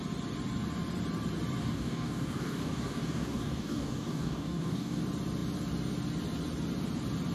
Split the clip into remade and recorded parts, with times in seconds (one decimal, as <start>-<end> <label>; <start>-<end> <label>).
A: 0.0-1.6 recorded; 1.6-5.0 remade; 5.0-7.3 recorded